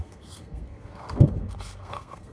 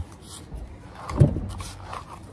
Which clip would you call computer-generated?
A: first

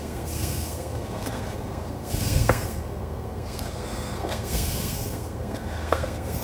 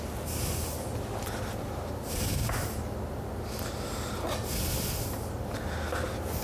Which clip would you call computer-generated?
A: first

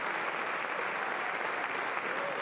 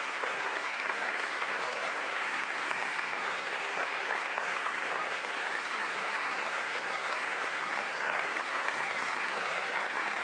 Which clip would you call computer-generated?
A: second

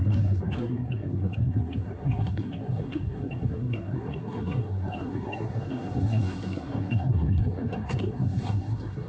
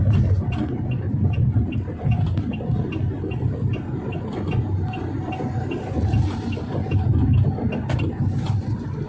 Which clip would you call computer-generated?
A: first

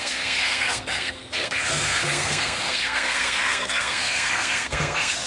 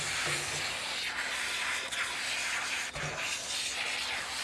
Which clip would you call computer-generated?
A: first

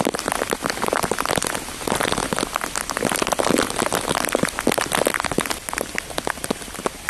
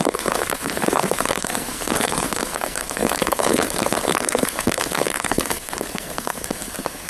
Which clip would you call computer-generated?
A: second